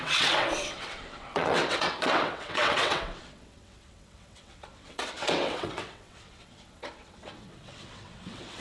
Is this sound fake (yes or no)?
yes